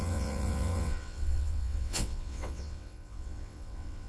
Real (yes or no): no